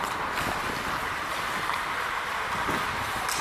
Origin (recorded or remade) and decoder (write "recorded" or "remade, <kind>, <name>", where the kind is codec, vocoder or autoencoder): recorded